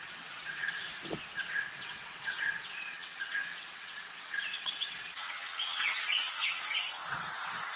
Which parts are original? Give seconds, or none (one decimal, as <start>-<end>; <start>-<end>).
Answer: 0.8-1.3